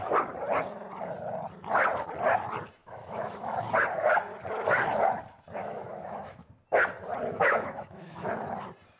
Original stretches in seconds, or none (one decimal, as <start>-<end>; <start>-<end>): 0.0-2.8; 3.7-5.6; 6.5-7.3; 8.3-9.0